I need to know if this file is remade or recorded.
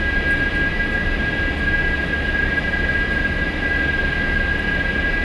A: recorded